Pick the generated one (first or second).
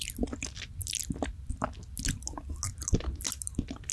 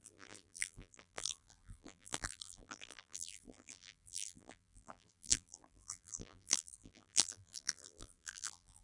second